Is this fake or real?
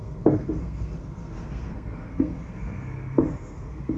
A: fake